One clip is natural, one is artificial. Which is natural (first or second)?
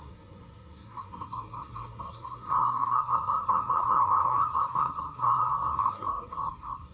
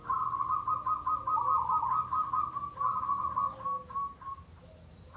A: second